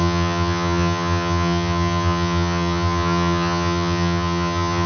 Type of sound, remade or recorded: remade